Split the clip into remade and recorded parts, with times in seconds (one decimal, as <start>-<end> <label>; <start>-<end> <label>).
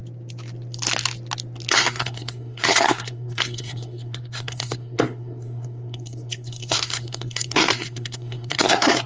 0.0-1.7 recorded; 1.7-9.1 remade